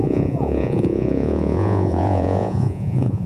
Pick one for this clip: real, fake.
fake